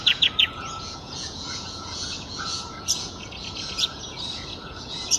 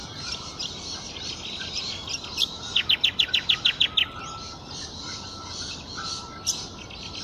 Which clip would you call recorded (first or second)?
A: second